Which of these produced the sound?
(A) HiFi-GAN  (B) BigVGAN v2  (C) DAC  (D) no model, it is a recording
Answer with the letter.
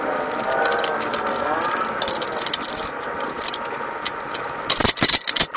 D